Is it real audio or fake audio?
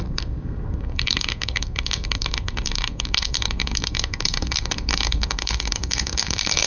fake